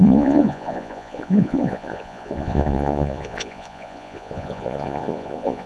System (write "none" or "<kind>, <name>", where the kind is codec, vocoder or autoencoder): vocoder, Vocos